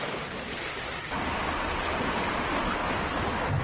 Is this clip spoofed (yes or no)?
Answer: no